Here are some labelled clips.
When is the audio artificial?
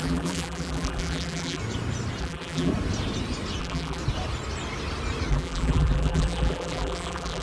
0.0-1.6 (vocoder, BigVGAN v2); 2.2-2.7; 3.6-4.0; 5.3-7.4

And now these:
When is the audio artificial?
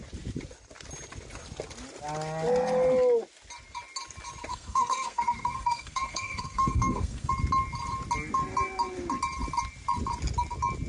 4.5-7.3 (codec, SNAC)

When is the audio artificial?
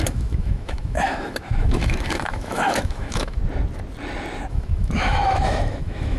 0.0-3.4 (autoencoder, DAC-VAE); 4.5-6.2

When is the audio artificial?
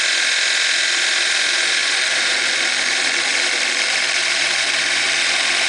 1.8-5.2 (vocoder, BigVGAN v2)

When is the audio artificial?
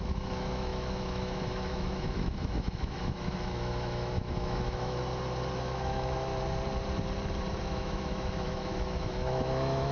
0.0-5.0 (autoencoder, DAC-VAE); 5.6-6.3; 7.6-9.9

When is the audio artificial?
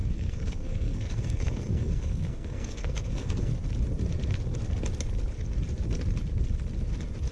0.0-3.5 (codec, SNAC)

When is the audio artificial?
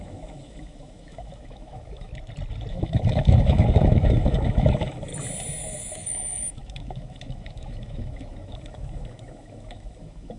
0.0-2.1 (autoencoder, DAC-VAE); 2.7-5.1; 5.6-10.4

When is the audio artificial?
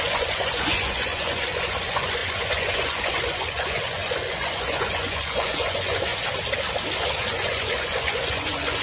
0.0-6.1 (vocoder, Vocos); 7.2-8.8